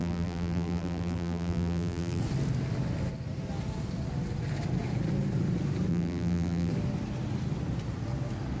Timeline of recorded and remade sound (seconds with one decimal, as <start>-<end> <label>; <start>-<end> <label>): 0.0-2.2 remade; 2.2-5.9 recorded; 5.9-6.7 remade; 6.7-8.6 recorded

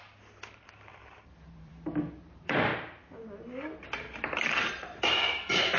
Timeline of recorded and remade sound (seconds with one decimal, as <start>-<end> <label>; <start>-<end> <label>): 0.0-1.7 remade; 1.7-2.2 recorded; 2.2-2.7 remade; 2.7-3.9 recorded; 3.9-5.8 remade

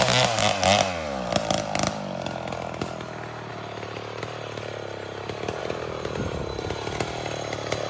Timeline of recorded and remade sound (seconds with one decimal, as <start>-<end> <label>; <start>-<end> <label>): 0.0-3.5 recorded; 3.5-4.2 remade; 4.2-5.6 recorded; 5.6-6.4 remade; 6.4-7.9 recorded

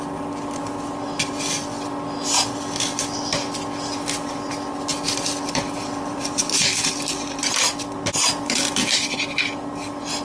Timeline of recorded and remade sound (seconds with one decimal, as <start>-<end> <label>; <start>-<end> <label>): 0.0-4.9 recorded; 4.9-7.4 remade; 7.4-10.2 recorded